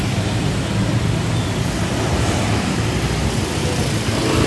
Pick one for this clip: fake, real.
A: real